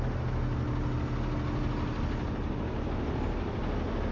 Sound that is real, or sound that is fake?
real